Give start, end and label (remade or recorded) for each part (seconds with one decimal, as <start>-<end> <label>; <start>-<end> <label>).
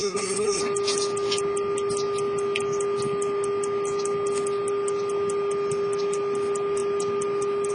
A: 0.0-0.6 remade; 0.6-7.7 recorded